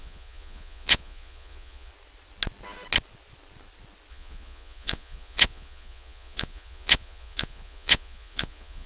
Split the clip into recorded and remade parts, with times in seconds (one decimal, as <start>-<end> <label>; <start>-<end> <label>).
0.0-1.9 remade; 1.9-4.1 recorded; 4.1-8.9 remade